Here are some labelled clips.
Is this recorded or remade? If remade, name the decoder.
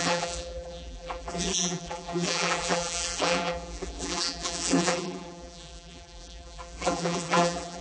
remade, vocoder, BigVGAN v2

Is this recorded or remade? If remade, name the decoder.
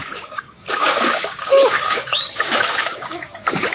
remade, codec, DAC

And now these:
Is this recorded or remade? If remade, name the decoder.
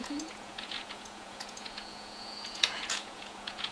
remade, vocoder, Vocos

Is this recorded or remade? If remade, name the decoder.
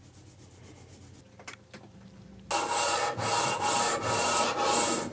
recorded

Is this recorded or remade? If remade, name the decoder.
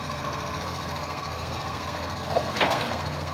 remade, codec, SNAC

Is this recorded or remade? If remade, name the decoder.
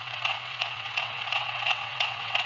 remade, vocoder, WaveNeXt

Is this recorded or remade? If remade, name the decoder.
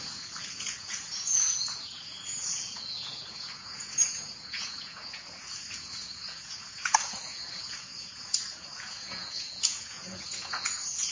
remade, vocoder, Vocos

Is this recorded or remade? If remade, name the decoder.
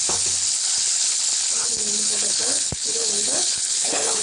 remade, codec, HILCodec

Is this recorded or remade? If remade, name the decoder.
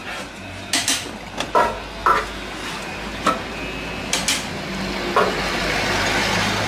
recorded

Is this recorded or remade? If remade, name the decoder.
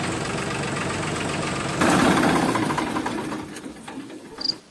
recorded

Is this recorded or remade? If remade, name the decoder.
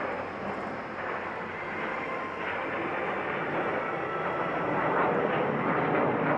recorded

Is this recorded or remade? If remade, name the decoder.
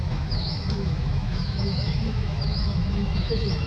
remade, autoencoder, DAC-VAE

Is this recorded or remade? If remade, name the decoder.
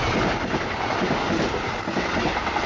recorded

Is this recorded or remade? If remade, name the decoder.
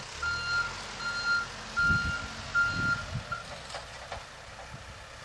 recorded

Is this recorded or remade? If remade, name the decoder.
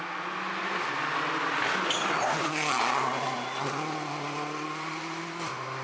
recorded